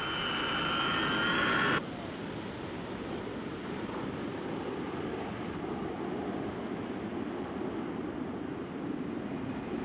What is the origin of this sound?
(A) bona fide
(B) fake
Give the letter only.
A